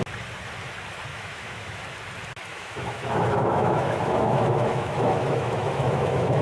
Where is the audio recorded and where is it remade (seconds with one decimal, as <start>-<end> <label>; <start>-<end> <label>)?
0.0-1.1 recorded; 1.1-1.8 remade; 1.8-2.5 recorded; 2.5-6.4 remade